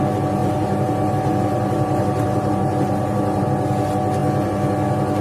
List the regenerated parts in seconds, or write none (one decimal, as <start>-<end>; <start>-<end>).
0.4-3.4